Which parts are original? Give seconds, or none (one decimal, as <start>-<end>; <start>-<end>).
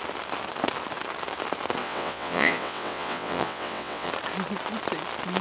0.0-1.8; 4.1-5.4